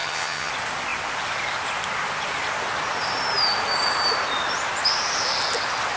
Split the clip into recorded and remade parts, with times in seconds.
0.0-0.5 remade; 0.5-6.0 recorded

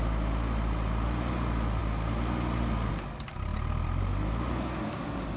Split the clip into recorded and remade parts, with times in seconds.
0.0-5.4 recorded

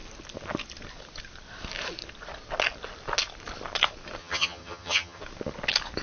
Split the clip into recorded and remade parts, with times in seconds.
0.0-4.2 recorded; 4.2-5.2 remade; 5.2-6.0 recorded